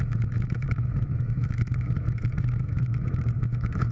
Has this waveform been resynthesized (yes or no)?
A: yes